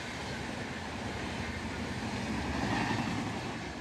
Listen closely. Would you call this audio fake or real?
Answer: real